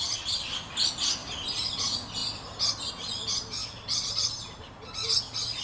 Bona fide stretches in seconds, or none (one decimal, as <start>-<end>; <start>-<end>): 0.0-5.6